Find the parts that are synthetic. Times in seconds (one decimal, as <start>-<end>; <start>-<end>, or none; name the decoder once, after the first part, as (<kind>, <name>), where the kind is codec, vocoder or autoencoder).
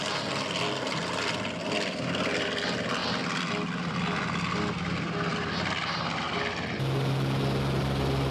none